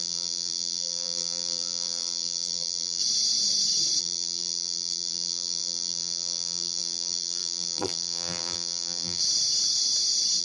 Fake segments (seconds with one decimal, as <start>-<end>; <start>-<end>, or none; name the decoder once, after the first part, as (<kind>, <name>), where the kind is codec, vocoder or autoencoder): 0.0-3.0 (vocoder, BigVGAN v2); 4.0-9.2